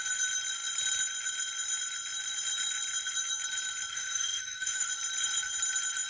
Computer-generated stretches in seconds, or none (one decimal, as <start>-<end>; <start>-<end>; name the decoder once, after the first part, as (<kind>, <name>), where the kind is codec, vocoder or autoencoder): 3.9-4.9 (autoencoder, DAC-VAE)